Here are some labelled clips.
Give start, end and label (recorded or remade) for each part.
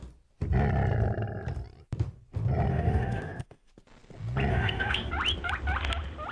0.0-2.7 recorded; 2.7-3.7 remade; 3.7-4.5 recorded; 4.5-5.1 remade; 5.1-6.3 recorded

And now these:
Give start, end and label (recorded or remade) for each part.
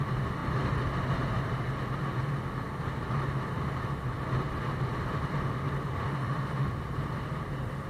0.0-5.8 recorded; 5.8-6.7 remade; 6.7-7.9 recorded